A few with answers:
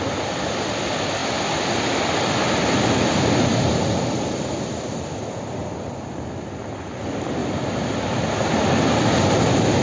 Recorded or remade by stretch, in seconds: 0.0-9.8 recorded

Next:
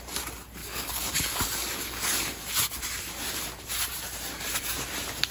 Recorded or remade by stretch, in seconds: 0.0-0.6 recorded; 0.6-2.4 remade; 2.4-5.3 recorded

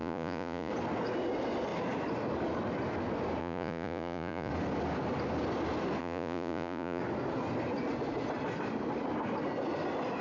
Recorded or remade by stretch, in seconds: 0.0-0.7 remade; 0.7-3.4 recorded; 3.4-4.5 remade; 4.5-6.0 recorded; 6.0-7.0 remade; 7.0-10.2 recorded

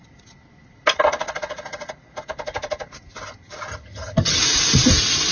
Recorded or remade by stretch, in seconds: 0.0-3.7 recorded; 3.7-4.4 remade; 4.4-5.3 recorded

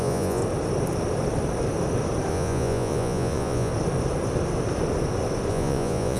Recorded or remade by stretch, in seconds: 0.0-0.4 remade; 0.4-2.3 recorded; 2.3-3.7 remade; 3.7-5.5 recorded; 5.5-6.2 remade

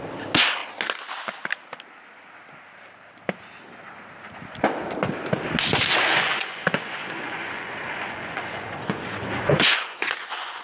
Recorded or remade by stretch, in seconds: 0.0-6.1 recorded; 6.1-10.6 remade